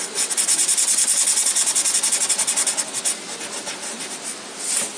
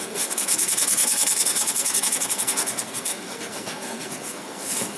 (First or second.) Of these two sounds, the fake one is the second